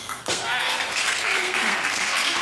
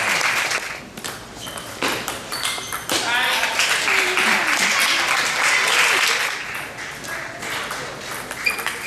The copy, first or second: first